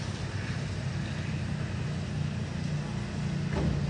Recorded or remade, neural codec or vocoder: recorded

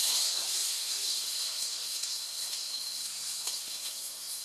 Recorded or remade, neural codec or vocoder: remade, codec, SNAC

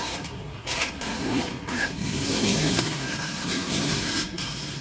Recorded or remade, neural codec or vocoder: remade, codec, SNAC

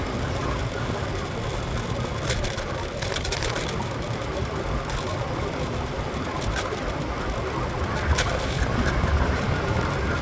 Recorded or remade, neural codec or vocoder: remade, vocoder, BigVGAN v2